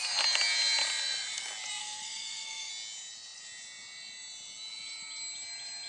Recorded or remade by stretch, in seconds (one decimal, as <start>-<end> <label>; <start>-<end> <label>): 0.0-1.8 recorded; 1.8-2.7 remade; 2.7-5.9 recorded